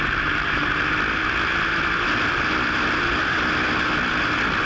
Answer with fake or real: real